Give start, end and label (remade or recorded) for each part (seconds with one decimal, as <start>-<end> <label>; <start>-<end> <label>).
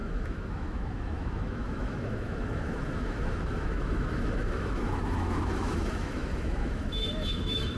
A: 0.0-7.8 remade